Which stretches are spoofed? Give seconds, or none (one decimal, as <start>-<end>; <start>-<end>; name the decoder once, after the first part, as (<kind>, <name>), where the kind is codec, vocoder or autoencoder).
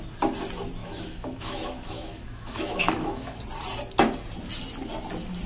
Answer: 0.8-3.4 (autoencoder, DAC-VAE)